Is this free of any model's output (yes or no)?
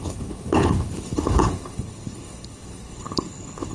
no